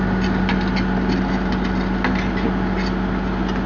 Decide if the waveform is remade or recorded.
recorded